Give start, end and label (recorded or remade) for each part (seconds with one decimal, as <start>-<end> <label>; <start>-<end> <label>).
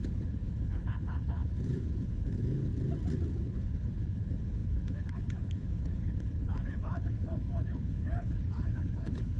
0.0-2.7 remade; 2.7-3.3 recorded; 3.3-9.4 remade